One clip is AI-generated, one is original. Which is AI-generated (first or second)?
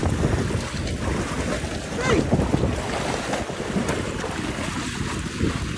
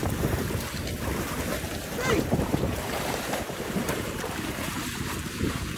second